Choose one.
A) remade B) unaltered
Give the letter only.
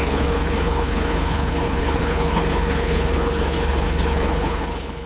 A